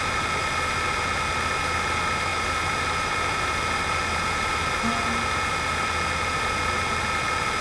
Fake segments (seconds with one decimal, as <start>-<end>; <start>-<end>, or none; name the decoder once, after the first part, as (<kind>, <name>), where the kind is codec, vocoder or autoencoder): none